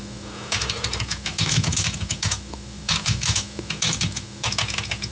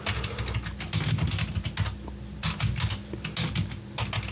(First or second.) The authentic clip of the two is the second